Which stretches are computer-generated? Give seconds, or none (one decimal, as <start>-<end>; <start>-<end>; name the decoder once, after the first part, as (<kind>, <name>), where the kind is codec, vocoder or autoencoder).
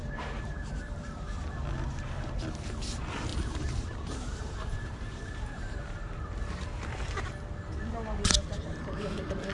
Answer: 0.0-1.3 (vocoder, BigVGAN v2); 3.3-6.2